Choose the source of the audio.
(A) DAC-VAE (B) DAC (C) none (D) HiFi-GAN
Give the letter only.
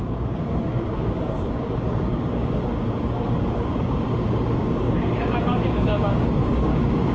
B